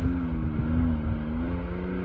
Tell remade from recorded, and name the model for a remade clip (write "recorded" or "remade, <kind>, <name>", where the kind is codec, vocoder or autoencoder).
recorded